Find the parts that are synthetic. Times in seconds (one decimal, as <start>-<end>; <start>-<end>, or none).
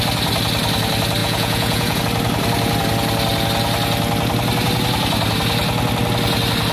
1.2-2.0